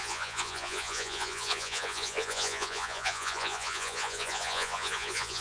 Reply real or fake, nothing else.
fake